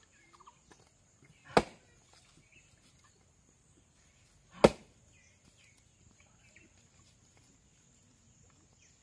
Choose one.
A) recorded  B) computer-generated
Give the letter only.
A